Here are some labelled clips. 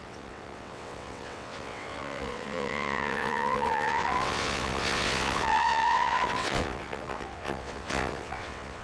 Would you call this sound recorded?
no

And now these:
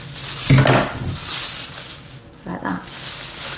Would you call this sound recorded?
yes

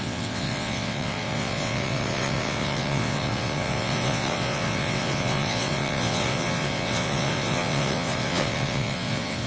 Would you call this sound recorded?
no